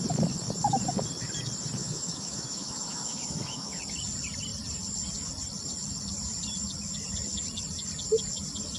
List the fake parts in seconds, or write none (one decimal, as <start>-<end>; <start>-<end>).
1.8-3.8